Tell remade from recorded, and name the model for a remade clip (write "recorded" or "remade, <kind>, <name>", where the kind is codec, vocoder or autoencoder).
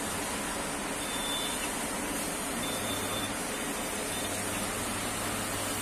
recorded